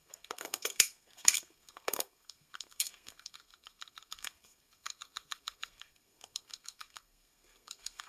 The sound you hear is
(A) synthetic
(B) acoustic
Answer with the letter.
A